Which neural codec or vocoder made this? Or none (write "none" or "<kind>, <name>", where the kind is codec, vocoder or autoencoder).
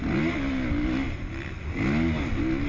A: none